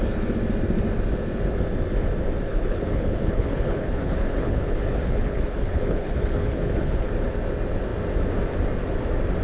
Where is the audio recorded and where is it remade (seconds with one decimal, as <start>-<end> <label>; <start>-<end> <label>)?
0.0-2.5 recorded; 2.5-7.1 remade; 7.1-9.4 recorded